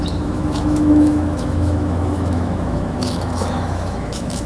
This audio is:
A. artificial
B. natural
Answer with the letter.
A